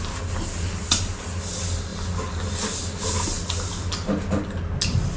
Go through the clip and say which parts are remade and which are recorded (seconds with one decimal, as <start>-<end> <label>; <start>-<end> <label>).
0.0-5.2 recorded